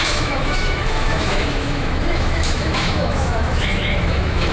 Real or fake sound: fake